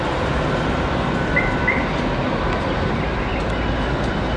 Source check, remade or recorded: recorded